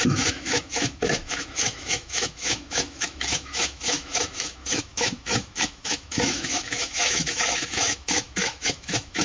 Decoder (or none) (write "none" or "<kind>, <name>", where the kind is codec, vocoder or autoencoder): autoencoder, DAC-VAE